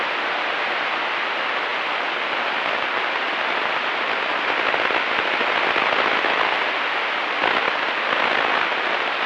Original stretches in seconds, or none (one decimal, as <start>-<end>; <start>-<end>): 0.0-9.3